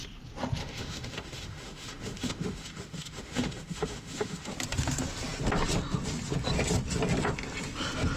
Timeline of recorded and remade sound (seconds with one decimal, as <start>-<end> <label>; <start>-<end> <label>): 0.0-0.6 recorded; 0.6-4.5 remade; 4.5-8.2 recorded